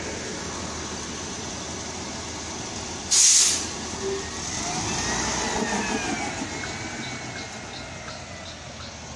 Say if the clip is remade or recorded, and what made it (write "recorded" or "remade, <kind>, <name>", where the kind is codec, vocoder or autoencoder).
recorded